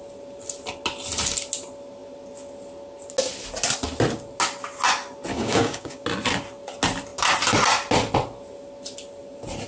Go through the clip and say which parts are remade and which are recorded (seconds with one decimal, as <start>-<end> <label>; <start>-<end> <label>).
0.0-5.3 recorded; 5.3-6.0 remade; 6.0-9.7 recorded